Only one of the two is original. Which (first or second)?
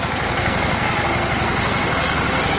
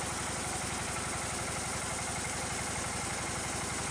second